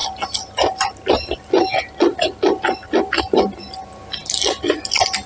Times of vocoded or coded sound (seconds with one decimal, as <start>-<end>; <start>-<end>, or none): none